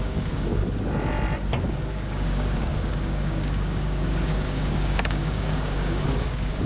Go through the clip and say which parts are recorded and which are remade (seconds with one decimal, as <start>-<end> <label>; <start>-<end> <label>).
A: 0.0-0.6 remade; 0.6-1.7 recorded; 1.7-6.7 remade